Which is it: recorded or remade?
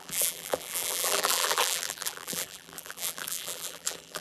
remade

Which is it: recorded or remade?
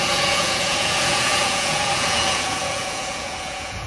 remade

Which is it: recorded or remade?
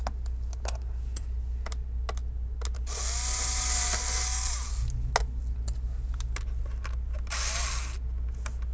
recorded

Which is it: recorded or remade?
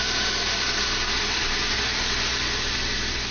recorded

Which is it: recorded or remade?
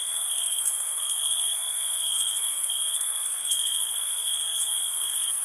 remade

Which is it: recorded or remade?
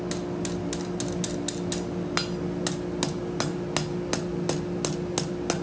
recorded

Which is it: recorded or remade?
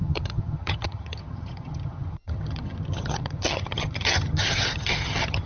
remade